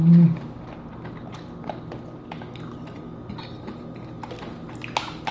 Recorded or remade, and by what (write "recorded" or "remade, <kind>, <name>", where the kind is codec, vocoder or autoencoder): recorded